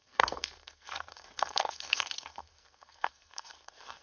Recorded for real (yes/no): no